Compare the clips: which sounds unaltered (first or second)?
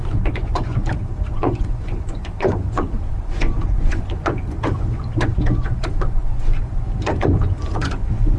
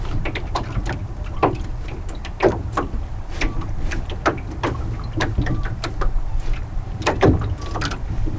second